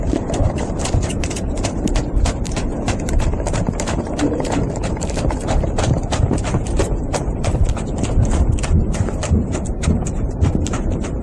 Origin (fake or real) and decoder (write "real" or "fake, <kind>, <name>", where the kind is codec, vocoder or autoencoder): fake, vocoder, BigVGAN v2